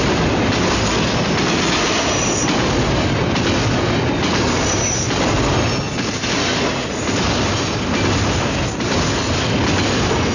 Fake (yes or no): no